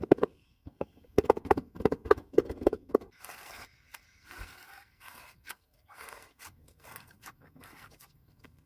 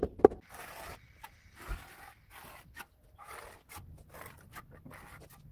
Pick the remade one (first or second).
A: first